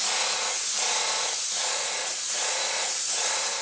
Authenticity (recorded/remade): remade